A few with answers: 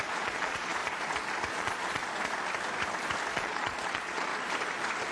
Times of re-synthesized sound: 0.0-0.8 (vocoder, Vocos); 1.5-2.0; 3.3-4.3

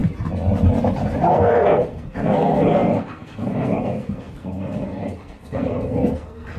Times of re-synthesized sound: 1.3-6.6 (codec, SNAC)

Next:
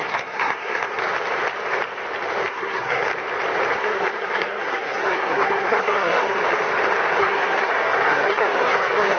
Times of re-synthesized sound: 0.0-1.0 (codec, SNAC); 2.5-3.1; 3.7-6.4; 7.2-9.2